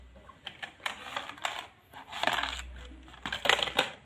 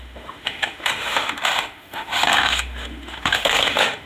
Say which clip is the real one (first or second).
first